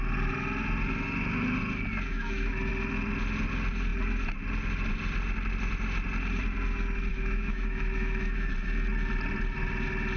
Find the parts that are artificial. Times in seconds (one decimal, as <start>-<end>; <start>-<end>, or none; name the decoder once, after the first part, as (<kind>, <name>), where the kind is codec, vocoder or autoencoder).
2.1-2.7 (autoencoder, DAC-VAE); 7.1-8.5